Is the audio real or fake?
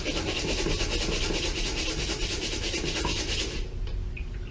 real